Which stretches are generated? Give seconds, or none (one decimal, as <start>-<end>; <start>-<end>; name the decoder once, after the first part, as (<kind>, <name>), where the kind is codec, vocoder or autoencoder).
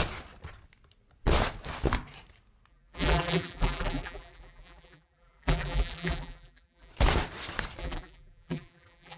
2.7-6.9 (vocoder, BigVGAN v2); 7.8-9.2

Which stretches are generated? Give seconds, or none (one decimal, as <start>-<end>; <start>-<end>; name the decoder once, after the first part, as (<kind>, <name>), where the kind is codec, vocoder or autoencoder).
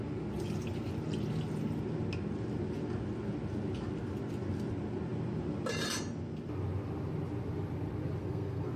8.2-8.8 (codec, SNAC)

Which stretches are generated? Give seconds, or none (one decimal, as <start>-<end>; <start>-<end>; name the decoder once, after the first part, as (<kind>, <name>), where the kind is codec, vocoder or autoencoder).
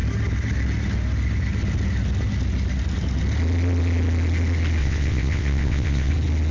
4.8-6.1 (vocoder, WaveNeXt)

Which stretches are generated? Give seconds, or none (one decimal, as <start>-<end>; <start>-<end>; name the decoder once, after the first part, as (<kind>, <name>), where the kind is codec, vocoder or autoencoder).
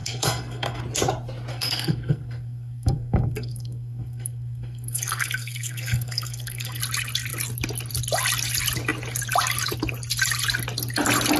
0.0-0.8 (codec, SNAC); 1.5-6.8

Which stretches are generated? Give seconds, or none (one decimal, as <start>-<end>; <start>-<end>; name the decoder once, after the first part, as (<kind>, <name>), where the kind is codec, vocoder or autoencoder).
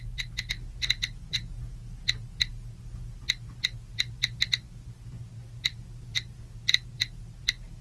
none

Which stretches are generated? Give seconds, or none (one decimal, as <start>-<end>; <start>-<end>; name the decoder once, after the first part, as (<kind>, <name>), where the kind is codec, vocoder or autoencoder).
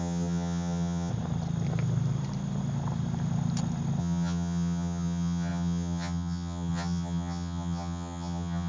0.0-1.1 (vocoder, HiFi-GAN); 4.0-8.7